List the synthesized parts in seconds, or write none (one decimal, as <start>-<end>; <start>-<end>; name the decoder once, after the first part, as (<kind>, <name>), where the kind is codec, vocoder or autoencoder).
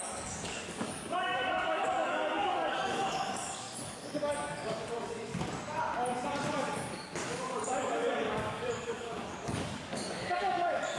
0.0-5.3 (codec, DAC); 6.5-11.0